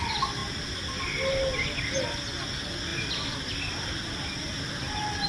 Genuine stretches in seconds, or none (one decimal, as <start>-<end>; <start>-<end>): 0.0-5.3